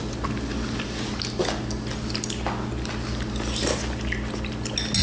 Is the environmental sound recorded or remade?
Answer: recorded